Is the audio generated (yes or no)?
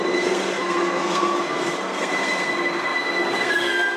yes